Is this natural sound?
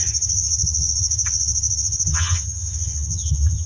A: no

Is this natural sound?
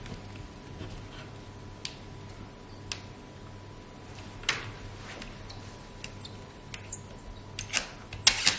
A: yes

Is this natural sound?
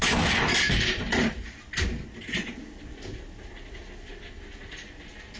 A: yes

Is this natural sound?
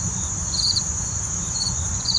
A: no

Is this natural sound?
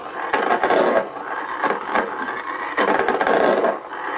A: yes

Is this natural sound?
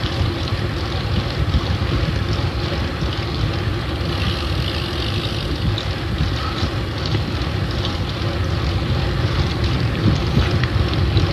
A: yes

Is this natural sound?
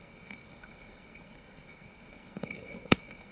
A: no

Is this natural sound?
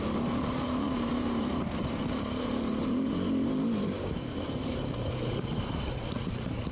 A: no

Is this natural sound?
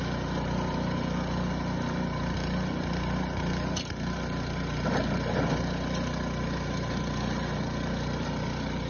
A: yes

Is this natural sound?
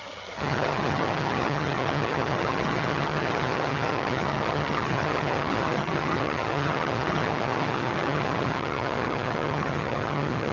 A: no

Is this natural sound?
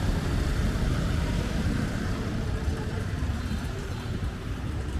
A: no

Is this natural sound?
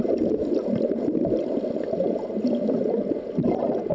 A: yes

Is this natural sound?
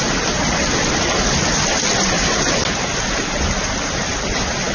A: yes